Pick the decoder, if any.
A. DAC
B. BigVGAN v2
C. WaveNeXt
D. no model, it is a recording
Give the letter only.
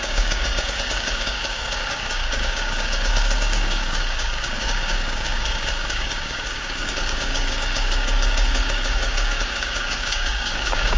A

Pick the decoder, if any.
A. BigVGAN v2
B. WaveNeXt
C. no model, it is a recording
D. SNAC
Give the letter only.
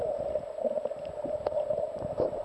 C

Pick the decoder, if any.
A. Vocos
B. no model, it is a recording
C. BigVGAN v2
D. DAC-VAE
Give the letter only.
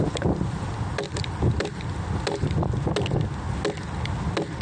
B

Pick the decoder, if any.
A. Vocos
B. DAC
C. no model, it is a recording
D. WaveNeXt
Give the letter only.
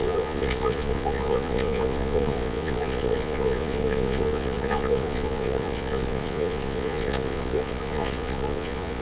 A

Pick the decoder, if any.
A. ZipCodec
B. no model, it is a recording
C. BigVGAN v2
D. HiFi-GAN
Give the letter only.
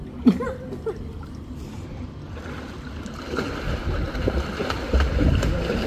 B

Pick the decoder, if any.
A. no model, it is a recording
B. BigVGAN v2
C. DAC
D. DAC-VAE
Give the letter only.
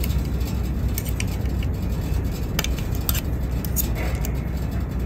A